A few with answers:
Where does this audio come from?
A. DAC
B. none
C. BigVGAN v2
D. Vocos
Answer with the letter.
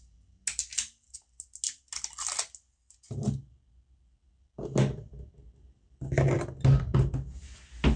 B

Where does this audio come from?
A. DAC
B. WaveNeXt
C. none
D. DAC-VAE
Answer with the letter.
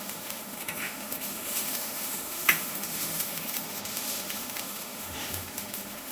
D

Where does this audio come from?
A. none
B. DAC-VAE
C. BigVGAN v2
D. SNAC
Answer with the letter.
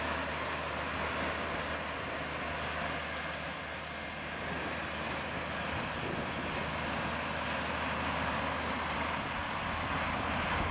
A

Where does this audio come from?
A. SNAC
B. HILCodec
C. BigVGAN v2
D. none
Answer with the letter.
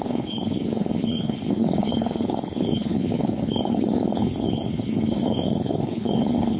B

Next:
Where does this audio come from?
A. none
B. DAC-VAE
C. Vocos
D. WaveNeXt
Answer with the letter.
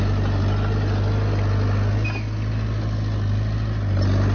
A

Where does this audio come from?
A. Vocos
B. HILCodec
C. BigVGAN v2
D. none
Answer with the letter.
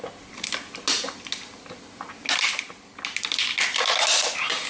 D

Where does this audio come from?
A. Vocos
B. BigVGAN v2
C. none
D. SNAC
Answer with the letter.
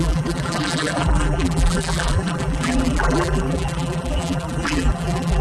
B